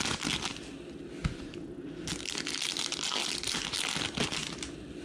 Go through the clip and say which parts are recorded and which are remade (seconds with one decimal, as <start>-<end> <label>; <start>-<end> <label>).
0.0-5.0 recorded